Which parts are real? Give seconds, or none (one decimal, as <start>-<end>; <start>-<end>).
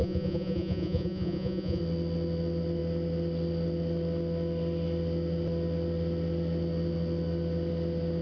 1.8-8.2